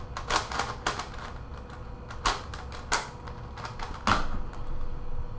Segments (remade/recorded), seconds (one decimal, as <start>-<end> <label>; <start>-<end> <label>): 0.0-5.4 recorded